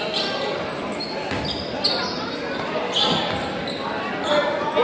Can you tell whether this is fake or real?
real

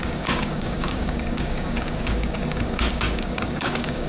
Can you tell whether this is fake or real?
fake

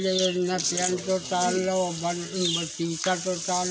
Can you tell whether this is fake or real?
real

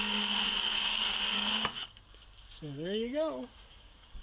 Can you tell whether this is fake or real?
fake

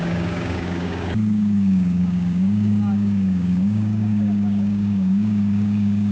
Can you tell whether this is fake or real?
fake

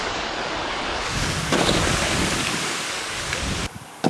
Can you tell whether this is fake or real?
fake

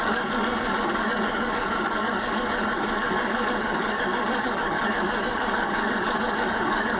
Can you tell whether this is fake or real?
fake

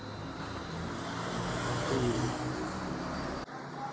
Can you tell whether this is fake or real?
real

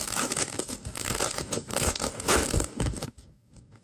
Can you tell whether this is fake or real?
fake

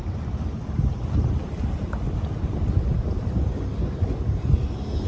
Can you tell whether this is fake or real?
real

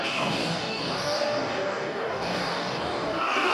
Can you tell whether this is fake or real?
fake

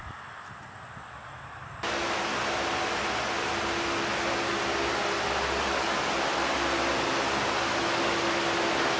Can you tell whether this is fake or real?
real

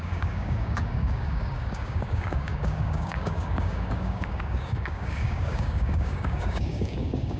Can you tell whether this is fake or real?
fake